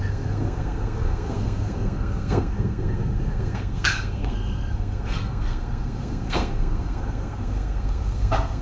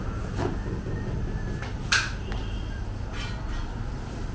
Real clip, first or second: second